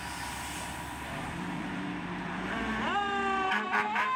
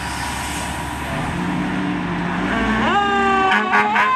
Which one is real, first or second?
second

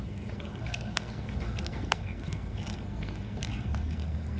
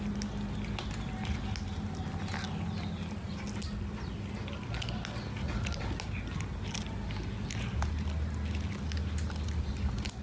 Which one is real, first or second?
second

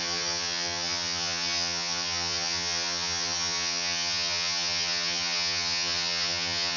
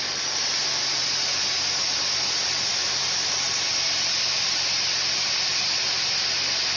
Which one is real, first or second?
second